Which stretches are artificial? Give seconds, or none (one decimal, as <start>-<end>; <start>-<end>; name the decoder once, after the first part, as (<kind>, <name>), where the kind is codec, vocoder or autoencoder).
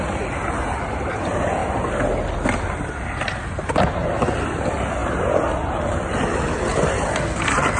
none